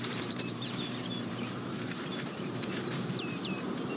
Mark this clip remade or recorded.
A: remade